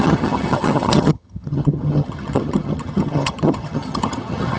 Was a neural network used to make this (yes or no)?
yes